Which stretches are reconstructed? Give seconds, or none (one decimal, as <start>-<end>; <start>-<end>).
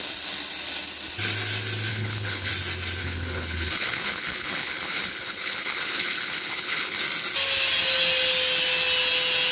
1.9-2.5; 3.0-7.0